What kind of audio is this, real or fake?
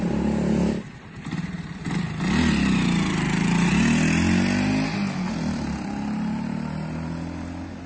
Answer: real